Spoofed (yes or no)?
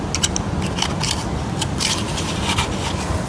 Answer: no